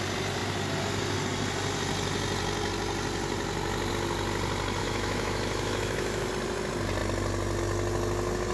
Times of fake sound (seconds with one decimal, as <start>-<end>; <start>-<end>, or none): 4.8-6.3